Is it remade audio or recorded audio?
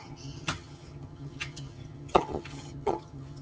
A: remade